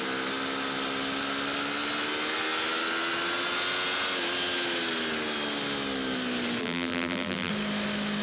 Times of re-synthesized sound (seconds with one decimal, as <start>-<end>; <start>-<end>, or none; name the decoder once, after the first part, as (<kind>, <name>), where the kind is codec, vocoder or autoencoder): 6.6-7.5 (vocoder, BigVGAN v2)